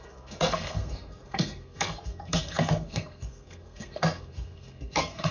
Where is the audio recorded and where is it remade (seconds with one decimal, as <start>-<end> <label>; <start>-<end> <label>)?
0.0-5.3 remade